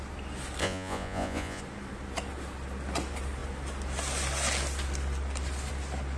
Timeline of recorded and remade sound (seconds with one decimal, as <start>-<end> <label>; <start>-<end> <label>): 0.0-0.6 recorded; 0.6-1.6 remade; 1.6-6.2 recorded